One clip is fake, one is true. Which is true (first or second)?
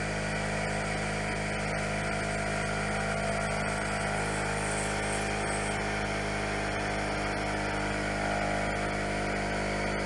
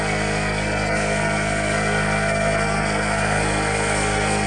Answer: first